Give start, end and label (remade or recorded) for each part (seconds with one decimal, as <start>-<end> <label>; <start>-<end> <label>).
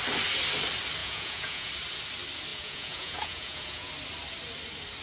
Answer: 0.0-1.0 recorded; 1.0-1.7 remade; 1.7-2.5 recorded; 2.5-3.9 remade; 3.9-5.0 recorded